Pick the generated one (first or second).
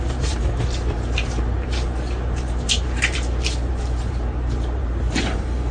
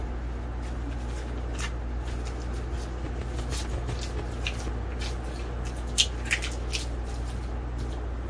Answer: first